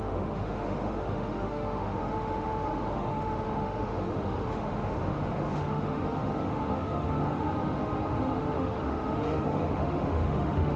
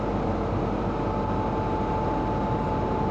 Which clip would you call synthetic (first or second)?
first